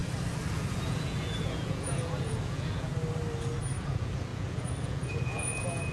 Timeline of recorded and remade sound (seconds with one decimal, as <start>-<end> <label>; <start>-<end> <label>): 0.0-0.5 recorded; 0.5-2.9 remade; 2.9-3.8 recorded; 3.8-5.9 remade